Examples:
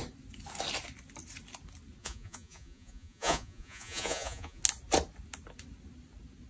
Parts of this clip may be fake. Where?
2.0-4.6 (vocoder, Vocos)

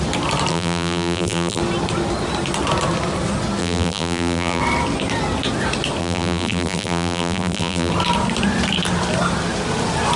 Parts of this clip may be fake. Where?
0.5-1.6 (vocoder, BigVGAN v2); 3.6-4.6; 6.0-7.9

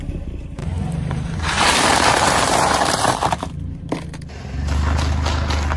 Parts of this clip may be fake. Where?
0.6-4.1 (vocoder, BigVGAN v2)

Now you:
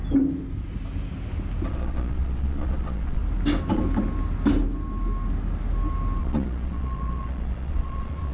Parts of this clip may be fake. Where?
1.7-3.2 (vocoder, Vocos); 6.2-8.3

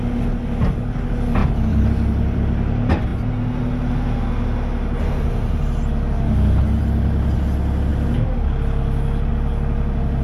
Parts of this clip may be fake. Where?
1.4-2.4 (vocoder, BigVGAN v2)

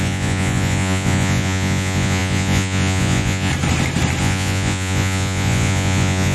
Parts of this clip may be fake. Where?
0.0-3.5 (vocoder, Vocos); 4.2-6.3

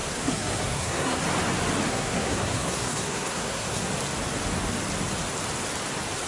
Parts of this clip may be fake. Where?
0.0-1.2 (codec, SNAC); 1.9-3.9